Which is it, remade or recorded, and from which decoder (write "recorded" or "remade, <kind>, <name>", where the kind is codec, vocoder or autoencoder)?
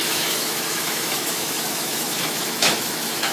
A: remade, autoencoder, DAC-VAE